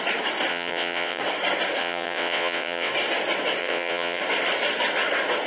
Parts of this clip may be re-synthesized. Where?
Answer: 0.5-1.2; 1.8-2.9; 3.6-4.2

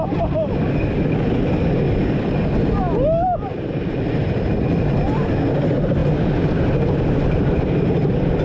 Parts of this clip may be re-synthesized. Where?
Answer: none